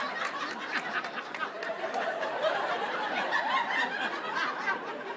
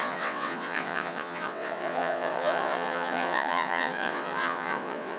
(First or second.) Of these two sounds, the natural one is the first